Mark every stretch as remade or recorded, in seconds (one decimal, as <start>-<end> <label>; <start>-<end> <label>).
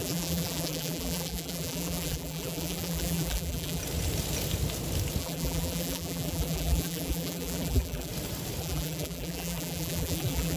0.0-3.8 remade; 3.8-5.2 recorded; 5.2-8.1 remade; 8.1-8.6 recorded; 8.6-10.6 remade